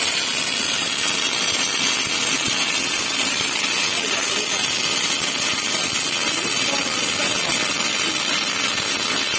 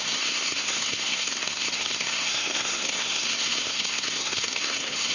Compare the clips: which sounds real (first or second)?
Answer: first